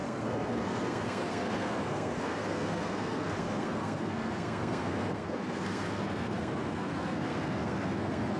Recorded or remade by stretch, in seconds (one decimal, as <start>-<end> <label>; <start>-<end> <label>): 0.0-8.4 remade